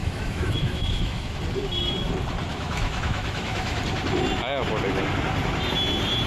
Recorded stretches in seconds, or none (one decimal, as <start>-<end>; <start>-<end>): 1.4-2.5; 3.8-6.3